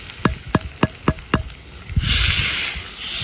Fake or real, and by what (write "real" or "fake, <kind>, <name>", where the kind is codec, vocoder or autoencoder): real